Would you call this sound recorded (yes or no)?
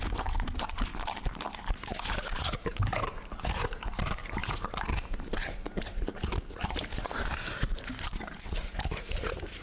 no